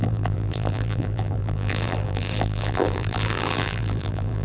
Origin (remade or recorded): remade